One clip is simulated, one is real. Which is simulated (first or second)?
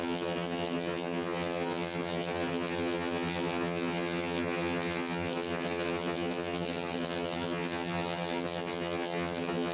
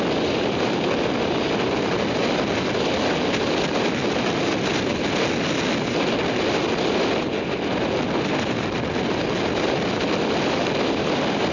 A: first